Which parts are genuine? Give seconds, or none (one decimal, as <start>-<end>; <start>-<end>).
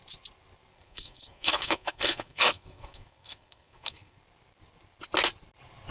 0.0-0.7; 4.2-5.9